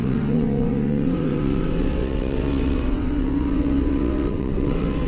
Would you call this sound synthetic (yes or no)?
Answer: yes